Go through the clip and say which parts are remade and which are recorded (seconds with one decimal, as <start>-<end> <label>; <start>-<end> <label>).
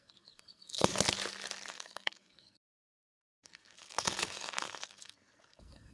0.0-0.9 remade; 0.9-1.7 recorded; 1.7-5.9 remade